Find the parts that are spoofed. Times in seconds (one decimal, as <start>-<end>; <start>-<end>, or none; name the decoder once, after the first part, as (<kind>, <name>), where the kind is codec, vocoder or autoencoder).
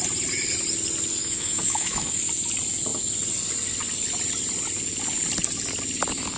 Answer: 1.2-2.2 (autoencoder, DAC-VAE)